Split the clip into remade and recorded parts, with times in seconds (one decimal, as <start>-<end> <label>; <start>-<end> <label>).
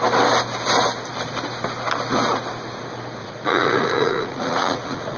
0.0-3.2 recorded; 3.2-5.2 remade